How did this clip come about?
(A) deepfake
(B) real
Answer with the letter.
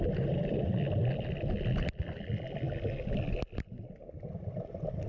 B